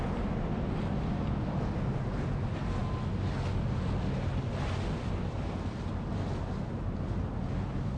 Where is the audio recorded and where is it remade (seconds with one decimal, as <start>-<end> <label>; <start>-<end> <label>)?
0.0-8.0 recorded